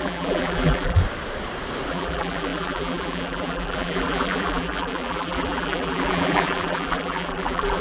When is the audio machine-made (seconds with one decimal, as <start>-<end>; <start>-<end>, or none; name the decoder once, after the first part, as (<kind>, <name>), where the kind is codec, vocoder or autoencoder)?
0.0-1.0 (vocoder, BigVGAN v2); 1.9-7.8